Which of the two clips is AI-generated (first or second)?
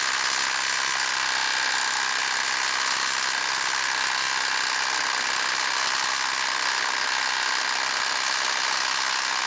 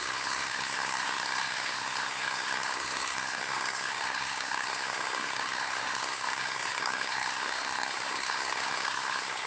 second